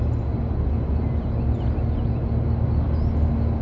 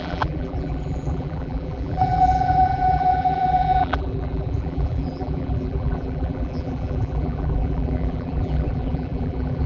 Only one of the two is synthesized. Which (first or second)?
second